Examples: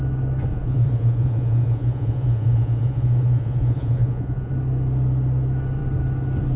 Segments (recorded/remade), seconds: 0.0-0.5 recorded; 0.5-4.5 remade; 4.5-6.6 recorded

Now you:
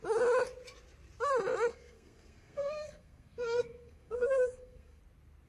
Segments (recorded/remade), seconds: 0.0-1.7 recorded; 1.7-5.0 remade; 5.0-5.5 recorded

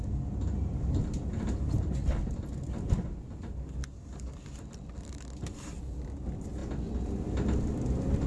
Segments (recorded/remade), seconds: 0.0-8.3 recorded

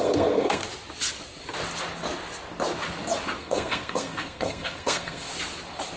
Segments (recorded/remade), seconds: 0.0-0.6 remade; 0.6-3.4 recorded; 3.4-5.3 remade; 5.3-6.0 recorded